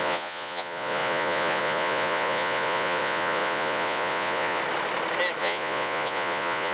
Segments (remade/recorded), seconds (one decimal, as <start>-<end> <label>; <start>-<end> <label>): 0.0-4.6 remade; 4.6-5.4 recorded; 5.4-6.7 remade